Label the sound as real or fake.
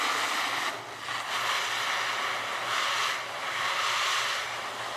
real